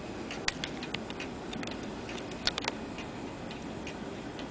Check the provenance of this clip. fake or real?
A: real